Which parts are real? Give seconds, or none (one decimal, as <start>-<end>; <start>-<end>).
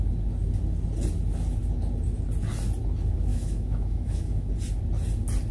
0.0-3.3; 4.5-5.5